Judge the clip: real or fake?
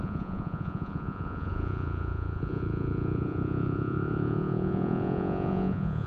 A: fake